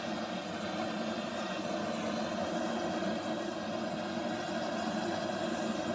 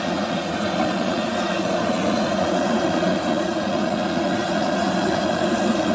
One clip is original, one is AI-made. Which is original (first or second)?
first